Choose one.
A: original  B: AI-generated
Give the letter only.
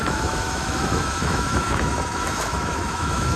B